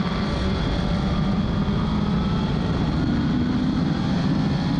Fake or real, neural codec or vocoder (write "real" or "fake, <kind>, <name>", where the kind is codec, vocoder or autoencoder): real